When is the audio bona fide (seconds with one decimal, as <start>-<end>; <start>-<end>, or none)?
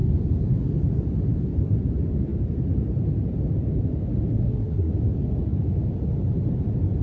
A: 0.0-4.3; 4.9-7.0